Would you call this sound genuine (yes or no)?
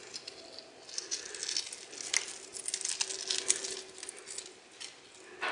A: yes